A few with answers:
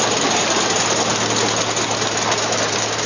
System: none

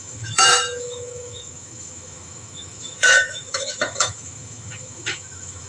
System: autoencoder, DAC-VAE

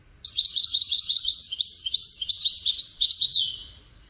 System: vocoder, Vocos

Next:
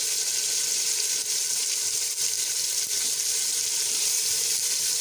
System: none